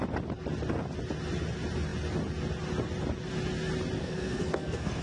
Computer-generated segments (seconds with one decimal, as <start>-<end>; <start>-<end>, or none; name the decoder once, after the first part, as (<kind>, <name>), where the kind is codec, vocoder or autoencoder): 4.0-5.0 (codec, SNAC)